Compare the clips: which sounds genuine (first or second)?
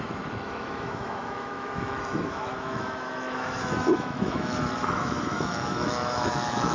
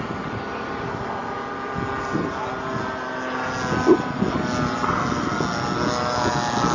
second